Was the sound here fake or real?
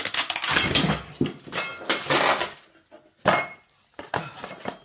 real